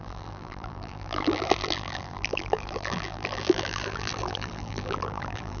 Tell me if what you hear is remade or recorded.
remade